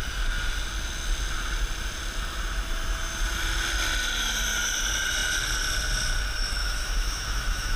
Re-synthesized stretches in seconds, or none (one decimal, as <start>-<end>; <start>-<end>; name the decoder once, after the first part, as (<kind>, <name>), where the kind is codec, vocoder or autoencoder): 6.6-7.8 (autoencoder, DAC-VAE)